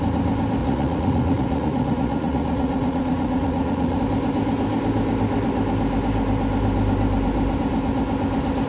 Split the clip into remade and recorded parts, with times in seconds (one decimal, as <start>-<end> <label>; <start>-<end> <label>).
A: 0.0-0.6 recorded; 0.6-4.0 remade; 4.0-8.7 recorded